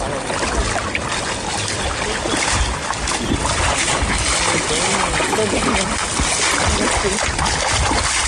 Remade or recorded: recorded